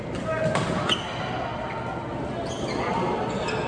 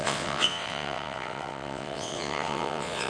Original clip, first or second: first